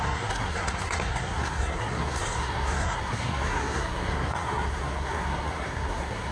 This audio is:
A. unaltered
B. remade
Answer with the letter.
B